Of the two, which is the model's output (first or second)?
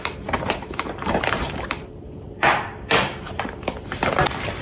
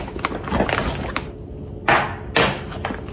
first